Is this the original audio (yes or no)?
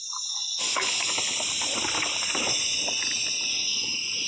yes